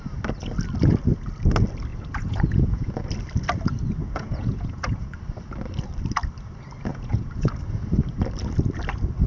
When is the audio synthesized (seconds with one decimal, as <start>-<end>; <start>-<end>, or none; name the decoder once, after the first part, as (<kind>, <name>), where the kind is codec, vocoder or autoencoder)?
1.9-2.9 (vocoder, Vocos); 4.0-5.1; 6.9-7.5